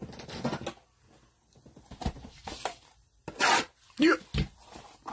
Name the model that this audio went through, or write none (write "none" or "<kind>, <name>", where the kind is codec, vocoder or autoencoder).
none